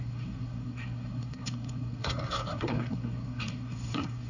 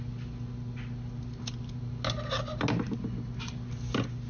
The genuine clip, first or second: second